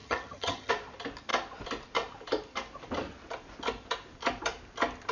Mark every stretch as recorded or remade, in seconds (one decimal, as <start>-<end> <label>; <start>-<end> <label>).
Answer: 0.0-0.7 remade; 0.7-5.1 recorded